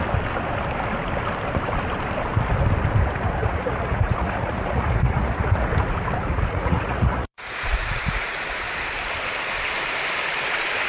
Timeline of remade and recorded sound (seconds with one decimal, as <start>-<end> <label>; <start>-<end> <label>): 0.0-3.4 recorded; 3.4-5.7 remade; 5.7-6.2 recorded; 6.2-8.4 remade; 8.4-10.9 recorded